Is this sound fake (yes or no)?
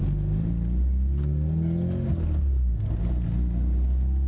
no